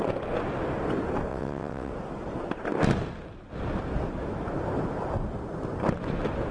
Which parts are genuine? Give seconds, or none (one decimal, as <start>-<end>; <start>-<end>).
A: 0.0-1.3; 1.9-6.5